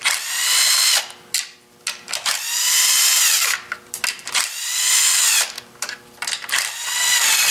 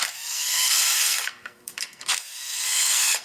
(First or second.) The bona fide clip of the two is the first